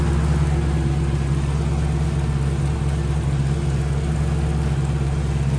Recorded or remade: recorded